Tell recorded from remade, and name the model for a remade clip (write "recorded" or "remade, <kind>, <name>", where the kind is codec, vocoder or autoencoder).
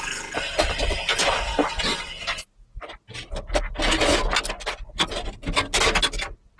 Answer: recorded